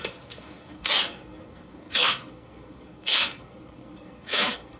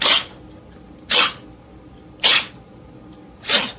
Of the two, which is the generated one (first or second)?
first